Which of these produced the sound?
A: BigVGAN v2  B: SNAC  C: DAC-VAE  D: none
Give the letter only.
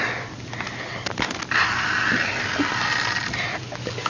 D